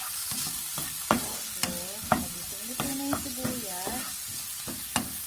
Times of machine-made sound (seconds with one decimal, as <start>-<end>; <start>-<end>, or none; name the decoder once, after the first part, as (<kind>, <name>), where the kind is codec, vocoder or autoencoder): none